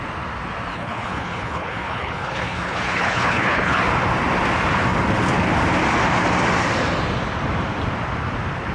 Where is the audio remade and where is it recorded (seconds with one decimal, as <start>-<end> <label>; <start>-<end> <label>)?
0.0-0.7 recorded; 0.7-3.8 remade; 3.8-8.7 recorded